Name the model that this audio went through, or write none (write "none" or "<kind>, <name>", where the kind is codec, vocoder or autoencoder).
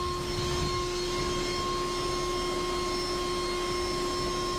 none